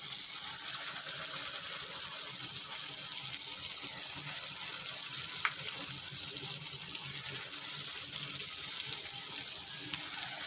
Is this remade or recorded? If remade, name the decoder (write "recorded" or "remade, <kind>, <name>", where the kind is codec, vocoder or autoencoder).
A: recorded